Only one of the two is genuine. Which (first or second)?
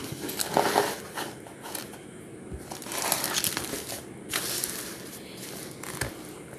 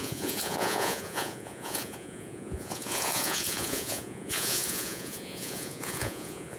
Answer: first